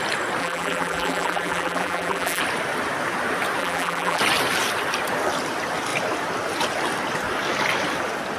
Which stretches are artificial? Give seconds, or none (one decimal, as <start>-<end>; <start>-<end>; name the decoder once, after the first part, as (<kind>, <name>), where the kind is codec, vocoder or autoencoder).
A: 0.4-2.4 (vocoder, BigVGAN v2); 3.6-4.2